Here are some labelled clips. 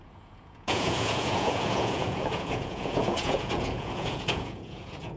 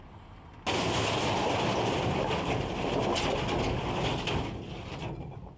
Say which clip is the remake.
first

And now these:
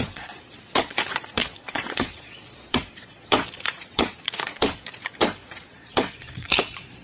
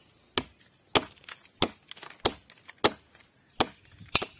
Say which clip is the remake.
first